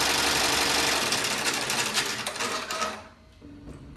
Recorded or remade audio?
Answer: recorded